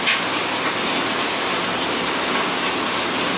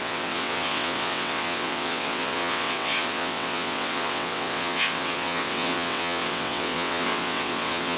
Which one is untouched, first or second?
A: first